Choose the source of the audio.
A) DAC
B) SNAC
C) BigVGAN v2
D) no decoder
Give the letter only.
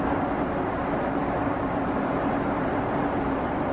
D